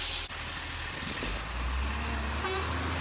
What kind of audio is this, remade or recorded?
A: recorded